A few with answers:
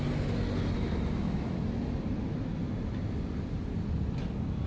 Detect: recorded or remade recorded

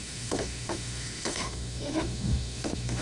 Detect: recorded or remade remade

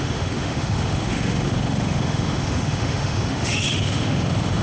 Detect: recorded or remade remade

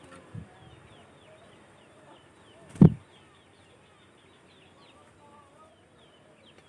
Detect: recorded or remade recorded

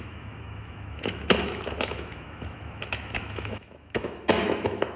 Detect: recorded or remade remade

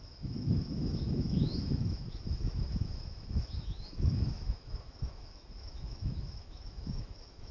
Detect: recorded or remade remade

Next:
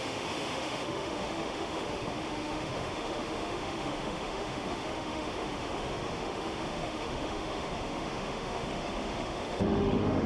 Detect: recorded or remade remade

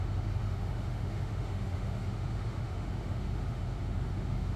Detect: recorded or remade remade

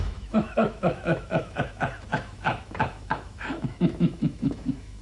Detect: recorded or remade remade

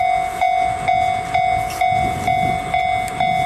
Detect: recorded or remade recorded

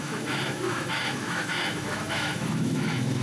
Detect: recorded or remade remade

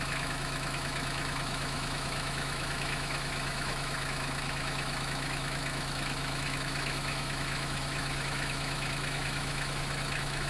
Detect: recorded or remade remade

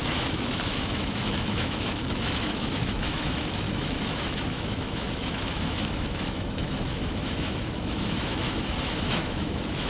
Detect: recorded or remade remade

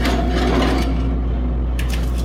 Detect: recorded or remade recorded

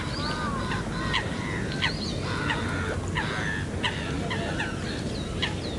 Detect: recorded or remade recorded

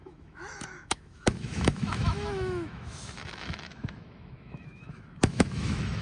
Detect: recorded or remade remade